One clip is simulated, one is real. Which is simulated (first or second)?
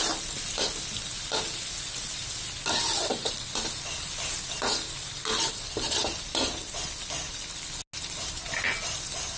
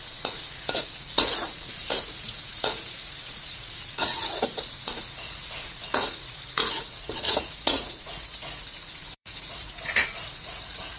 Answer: second